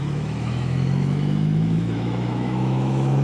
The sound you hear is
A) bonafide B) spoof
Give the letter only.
B